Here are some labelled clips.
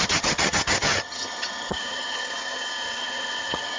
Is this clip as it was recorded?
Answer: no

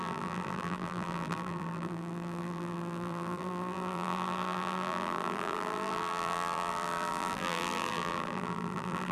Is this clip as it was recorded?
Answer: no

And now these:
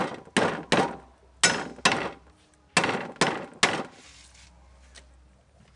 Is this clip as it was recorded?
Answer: yes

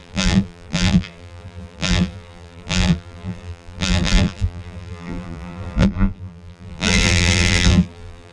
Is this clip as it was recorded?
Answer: no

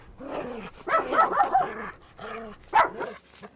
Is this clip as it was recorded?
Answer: yes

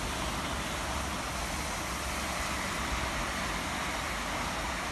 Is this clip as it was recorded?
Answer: yes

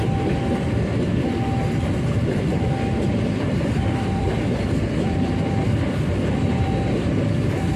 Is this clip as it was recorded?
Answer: no